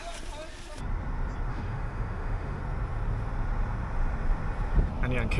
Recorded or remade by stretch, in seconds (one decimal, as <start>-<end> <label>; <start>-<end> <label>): 0.0-1.5 recorded; 1.5-2.6 remade; 2.6-5.4 recorded